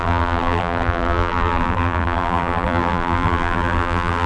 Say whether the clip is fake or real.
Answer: fake